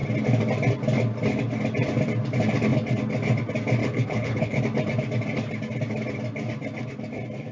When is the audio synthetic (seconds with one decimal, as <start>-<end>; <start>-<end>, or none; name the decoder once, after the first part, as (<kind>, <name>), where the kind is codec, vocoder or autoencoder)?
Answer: 3.8-4.6 (codec, HILCodec)